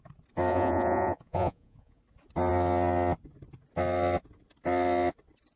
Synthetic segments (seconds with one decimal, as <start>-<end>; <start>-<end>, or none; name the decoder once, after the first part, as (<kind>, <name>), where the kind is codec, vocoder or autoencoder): 0.5-2.0 (vocoder, Vocos)